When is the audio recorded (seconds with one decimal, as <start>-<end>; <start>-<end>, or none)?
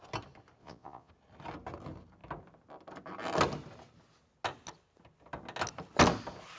0.0-0.6; 1.1-6.6